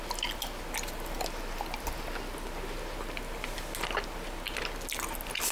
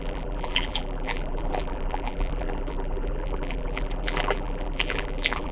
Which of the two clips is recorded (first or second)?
first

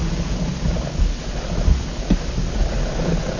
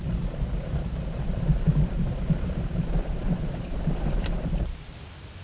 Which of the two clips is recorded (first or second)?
first